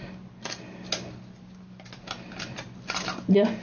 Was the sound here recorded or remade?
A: recorded